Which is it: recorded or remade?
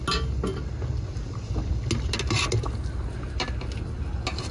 recorded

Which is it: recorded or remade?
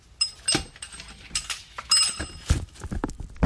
recorded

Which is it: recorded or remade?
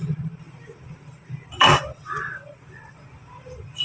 recorded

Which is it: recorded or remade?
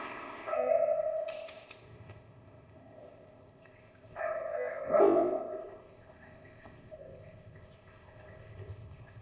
remade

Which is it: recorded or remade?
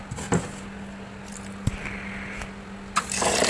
recorded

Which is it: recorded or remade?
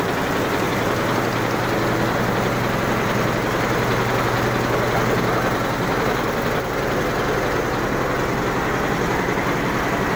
recorded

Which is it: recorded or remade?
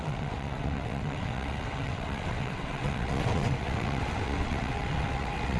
remade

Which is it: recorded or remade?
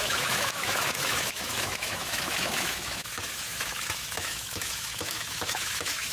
remade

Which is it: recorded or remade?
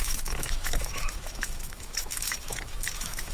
remade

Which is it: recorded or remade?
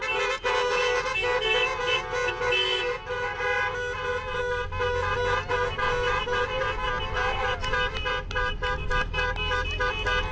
recorded